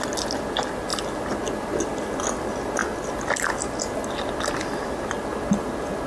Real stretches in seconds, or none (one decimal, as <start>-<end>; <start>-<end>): 0.0-0.9; 1.4-1.9; 2.4-6.1

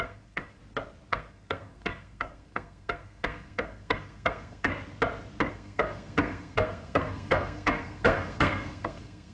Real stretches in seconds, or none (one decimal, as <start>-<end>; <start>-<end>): 0.6-1.1; 4.7-5.5

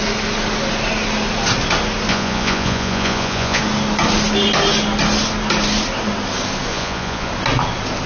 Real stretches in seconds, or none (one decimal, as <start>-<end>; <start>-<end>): 0.0-2.1; 3.6-6.7; 7.3-8.1

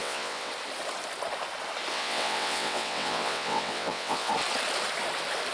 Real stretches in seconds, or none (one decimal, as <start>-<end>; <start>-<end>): 0.5-1.9; 4.3-5.5

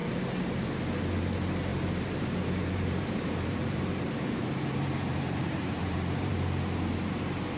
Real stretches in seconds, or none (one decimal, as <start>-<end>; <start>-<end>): 0.8-1.7; 6.3-7.6

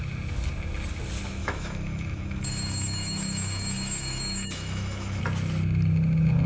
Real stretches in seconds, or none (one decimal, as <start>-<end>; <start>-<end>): 0.0-1.4; 5.2-6.5

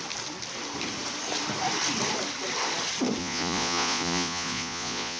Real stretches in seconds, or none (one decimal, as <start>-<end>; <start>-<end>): 0.0-3.2